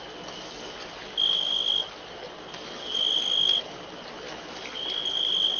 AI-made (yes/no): no